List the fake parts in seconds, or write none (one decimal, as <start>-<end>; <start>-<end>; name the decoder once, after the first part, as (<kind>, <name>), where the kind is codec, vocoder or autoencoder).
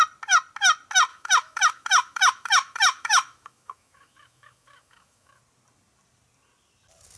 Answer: 1.1-5.4 (autoencoder, DAC-VAE)